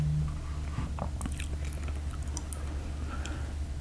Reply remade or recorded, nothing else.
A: recorded